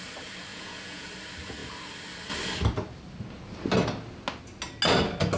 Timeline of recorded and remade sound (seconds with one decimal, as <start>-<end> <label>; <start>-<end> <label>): 0.0-0.5 recorded; 0.5-1.1 remade; 1.1-5.4 recorded